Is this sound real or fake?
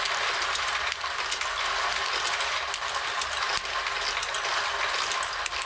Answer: real